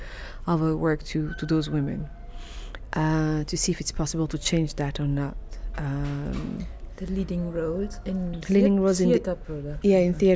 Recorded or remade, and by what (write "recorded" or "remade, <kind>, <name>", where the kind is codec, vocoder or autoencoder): recorded